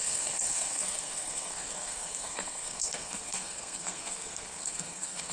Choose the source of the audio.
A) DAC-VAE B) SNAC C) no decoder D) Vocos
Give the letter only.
B